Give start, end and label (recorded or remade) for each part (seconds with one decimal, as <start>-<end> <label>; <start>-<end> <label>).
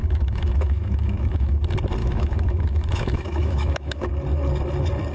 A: 0.0-1.6 remade; 1.6-2.0 recorded; 2.0-4.1 remade; 4.1-5.1 recorded